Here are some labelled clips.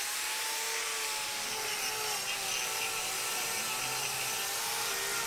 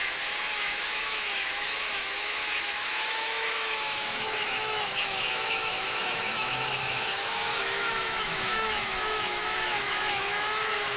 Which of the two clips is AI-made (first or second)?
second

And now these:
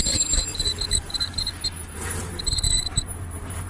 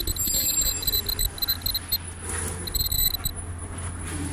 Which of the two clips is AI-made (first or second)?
first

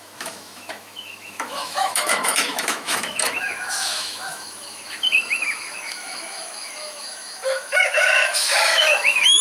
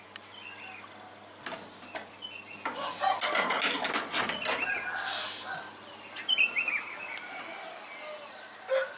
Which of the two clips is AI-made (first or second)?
first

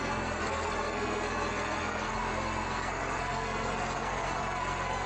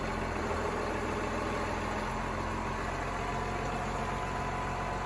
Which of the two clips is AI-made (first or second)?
first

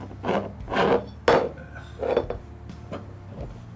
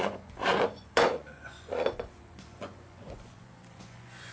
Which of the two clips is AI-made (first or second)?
second